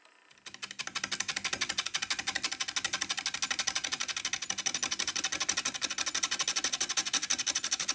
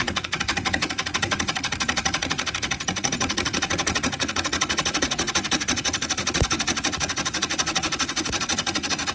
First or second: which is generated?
second